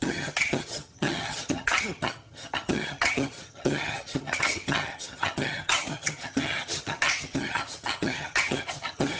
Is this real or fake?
fake